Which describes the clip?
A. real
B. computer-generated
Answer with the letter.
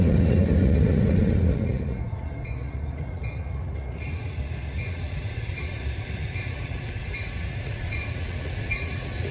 B